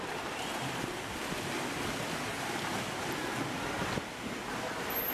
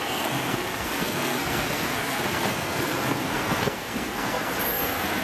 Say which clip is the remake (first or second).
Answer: second